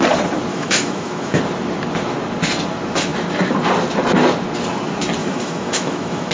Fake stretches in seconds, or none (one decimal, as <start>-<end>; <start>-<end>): 0.5-1.4; 5.2-6.3